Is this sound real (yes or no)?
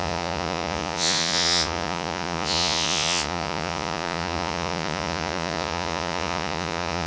no